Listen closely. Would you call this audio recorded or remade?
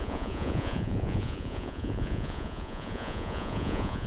remade